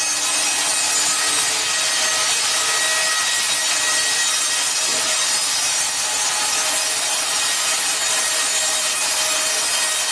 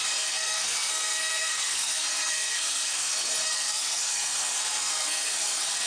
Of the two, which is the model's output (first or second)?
second